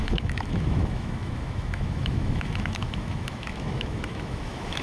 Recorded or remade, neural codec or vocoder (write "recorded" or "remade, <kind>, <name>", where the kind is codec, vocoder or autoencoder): remade, autoencoder, DAC-VAE